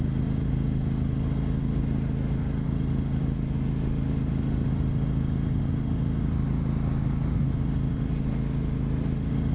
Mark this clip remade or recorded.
recorded